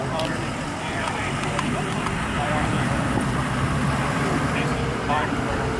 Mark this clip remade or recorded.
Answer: remade